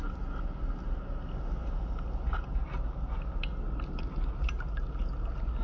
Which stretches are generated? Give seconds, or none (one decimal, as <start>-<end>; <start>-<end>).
none